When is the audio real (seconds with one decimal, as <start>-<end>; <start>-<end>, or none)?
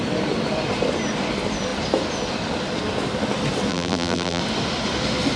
0.0-3.7; 4.4-5.4